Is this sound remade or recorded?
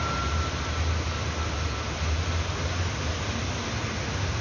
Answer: recorded